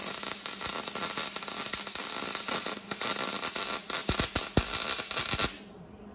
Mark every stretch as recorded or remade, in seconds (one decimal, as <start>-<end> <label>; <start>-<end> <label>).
0.0-6.1 recorded